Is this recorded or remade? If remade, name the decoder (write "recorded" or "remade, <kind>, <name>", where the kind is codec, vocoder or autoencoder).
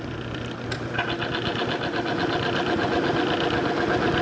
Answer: recorded